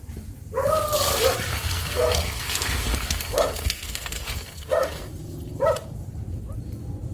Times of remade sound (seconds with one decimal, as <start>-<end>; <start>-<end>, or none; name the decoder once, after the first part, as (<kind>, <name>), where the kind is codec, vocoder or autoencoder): 1.5-5.1 (codec, SNAC)